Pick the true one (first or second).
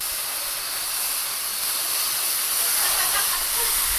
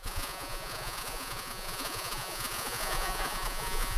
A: first